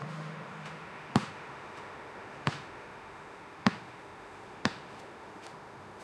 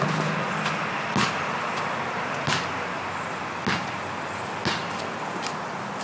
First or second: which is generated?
first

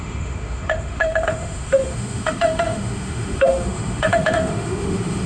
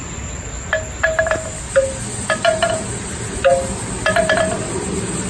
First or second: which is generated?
first